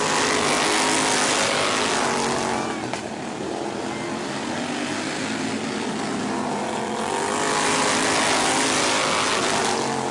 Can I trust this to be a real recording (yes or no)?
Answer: yes